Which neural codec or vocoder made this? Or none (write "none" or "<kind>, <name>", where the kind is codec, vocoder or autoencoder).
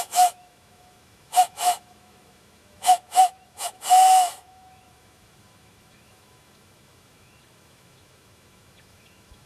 autoencoder, DAC-VAE